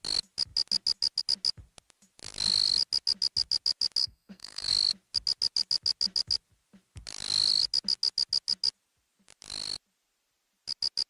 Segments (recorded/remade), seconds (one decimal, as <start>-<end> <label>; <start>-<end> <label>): 0.0-4.0 recorded; 4.0-4.7 remade; 4.7-11.1 recorded